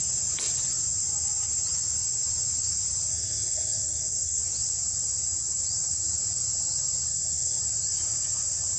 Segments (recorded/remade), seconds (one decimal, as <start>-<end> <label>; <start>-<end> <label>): 0.0-3.1 recorded; 3.1-4.4 remade; 4.4-7.1 recorded; 7.1-7.6 remade; 7.6-8.8 recorded